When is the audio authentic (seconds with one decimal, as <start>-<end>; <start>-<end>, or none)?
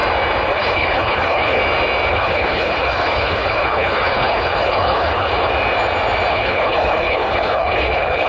0.0-0.5; 1.6-2.1; 5.5-6.3